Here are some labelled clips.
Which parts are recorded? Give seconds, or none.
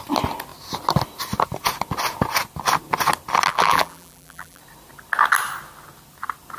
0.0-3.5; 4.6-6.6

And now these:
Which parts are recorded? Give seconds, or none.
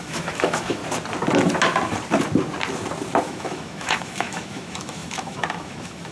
0.8-3.2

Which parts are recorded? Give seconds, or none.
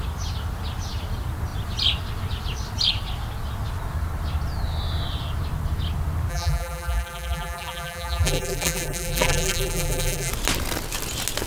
0.0-6.3; 10.3-11.5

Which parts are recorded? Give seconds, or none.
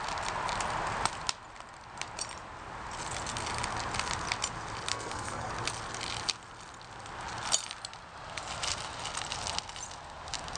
0.0-4.9; 5.5-10.6